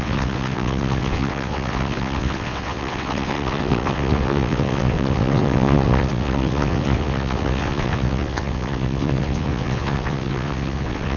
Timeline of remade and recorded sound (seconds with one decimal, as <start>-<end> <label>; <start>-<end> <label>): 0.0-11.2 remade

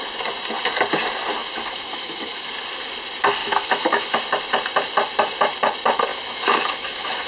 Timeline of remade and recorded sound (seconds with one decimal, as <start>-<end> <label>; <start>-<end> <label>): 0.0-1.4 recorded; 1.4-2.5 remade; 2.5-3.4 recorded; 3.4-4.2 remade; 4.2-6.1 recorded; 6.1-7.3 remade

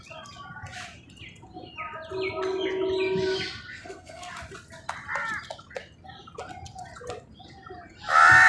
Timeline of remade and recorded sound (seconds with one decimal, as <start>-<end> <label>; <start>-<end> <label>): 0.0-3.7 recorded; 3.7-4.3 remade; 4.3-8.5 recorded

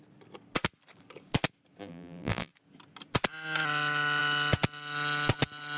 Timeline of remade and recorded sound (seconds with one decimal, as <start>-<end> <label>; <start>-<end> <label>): 0.0-1.8 recorded; 1.8-2.5 remade; 2.5-5.8 recorded

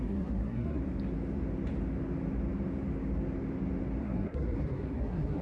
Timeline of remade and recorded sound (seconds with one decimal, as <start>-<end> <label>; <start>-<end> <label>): 0.0-0.8 remade; 0.8-4.0 recorded; 4.0-5.4 remade

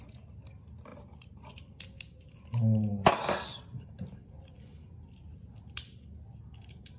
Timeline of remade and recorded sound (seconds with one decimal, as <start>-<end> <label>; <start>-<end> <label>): 0.0-7.0 recorded

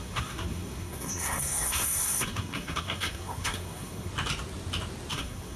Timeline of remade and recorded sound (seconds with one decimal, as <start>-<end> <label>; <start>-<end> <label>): 0.0-4.1 remade; 4.1-5.1 recorded; 5.1-5.6 remade

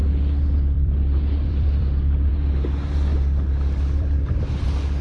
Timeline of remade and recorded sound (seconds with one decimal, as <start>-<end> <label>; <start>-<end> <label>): 0.0-2.3 remade; 2.3-3.1 recorded; 3.1-4.4 remade; 4.4-5.0 recorded